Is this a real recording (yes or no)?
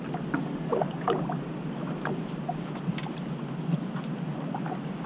yes